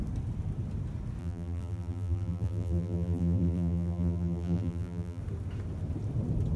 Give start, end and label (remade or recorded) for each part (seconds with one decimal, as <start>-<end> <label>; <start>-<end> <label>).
0.0-1.2 recorded; 1.2-5.2 remade; 5.2-6.6 recorded